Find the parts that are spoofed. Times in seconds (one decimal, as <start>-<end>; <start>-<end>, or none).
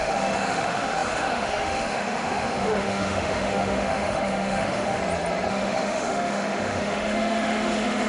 0.0-5.0; 5.5-8.1